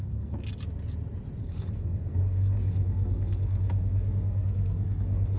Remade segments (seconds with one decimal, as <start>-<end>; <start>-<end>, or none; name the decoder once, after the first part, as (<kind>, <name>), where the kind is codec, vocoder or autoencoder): 0.0-0.4 (codec, SNAC); 1.4-5.4